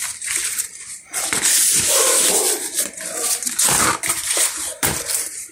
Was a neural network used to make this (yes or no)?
yes